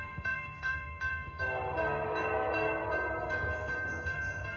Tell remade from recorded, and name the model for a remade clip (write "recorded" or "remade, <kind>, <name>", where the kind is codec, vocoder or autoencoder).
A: remade, codec, SNAC